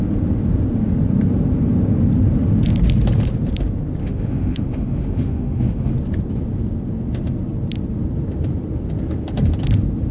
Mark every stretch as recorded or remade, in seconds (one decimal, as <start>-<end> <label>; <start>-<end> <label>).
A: 0.0-4.0 recorded; 4.0-5.9 remade; 5.9-10.1 recorded